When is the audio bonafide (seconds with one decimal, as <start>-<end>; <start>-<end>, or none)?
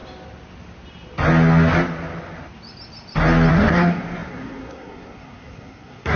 0.0-3.5